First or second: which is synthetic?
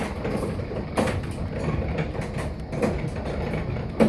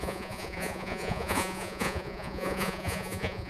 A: second